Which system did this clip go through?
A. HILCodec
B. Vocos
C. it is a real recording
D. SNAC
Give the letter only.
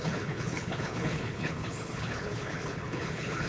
A